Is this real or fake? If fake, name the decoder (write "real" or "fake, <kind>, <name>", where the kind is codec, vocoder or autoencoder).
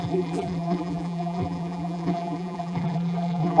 fake, vocoder, BigVGAN v2